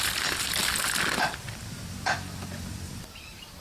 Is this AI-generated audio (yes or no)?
yes